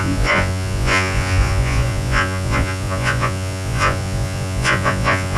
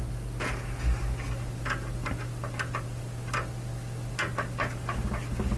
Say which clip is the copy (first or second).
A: first